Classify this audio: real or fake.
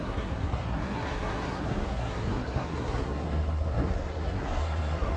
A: fake